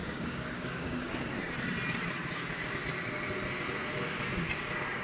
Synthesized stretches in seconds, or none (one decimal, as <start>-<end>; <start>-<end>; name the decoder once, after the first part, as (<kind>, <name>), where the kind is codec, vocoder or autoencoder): 0.0-1.2 (codec, DAC)